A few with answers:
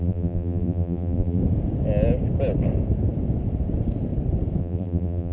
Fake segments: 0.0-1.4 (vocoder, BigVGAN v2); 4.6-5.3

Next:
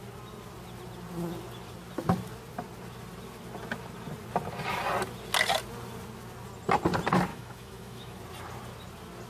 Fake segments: 7.3-8.2 (autoencoder, DAC-VAE)

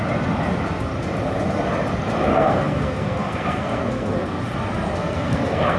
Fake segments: 2.3-4.4 (codec, SNAC); 5.0-5.8

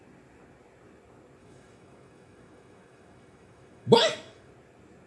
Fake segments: 1.4-4.5 (autoencoder, DAC-VAE)

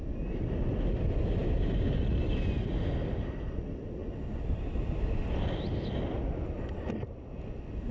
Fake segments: none

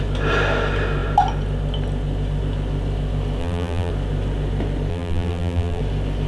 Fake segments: 3.4-3.9 (vocoder, BigVGAN v2); 4.9-5.8